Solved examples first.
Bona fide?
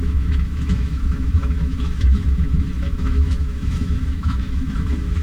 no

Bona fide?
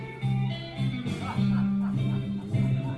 yes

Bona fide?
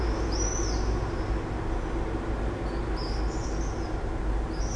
yes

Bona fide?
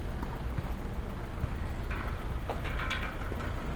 yes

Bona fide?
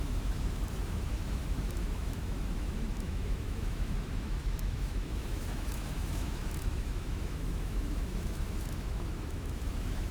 no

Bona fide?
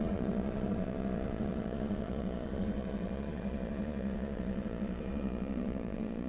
no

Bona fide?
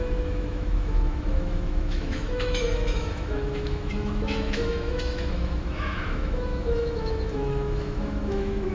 no